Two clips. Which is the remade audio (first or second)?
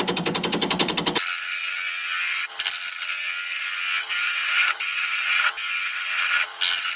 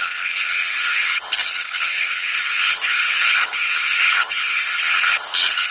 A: second